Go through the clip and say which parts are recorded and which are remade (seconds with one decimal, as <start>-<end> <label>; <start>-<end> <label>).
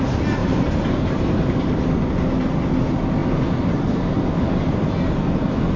0.0-0.4 recorded; 0.4-1.5 remade; 1.5-5.8 recorded